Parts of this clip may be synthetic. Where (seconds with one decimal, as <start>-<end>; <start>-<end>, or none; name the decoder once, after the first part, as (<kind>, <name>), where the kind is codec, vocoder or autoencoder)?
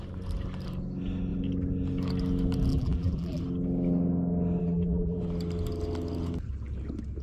2.7-3.4 (vocoder, BigVGAN v2); 4.6-5.2